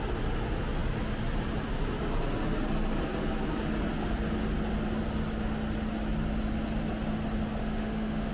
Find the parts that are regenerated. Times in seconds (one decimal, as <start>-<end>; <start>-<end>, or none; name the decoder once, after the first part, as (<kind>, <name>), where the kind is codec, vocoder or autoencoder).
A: 7.6-8.3 (autoencoder, DAC-VAE)